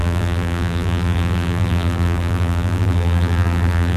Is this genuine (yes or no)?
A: no